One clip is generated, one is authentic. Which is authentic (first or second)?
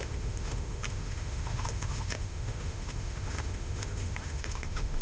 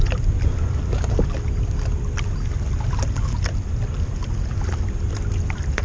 second